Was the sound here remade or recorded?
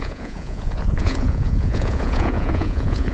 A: remade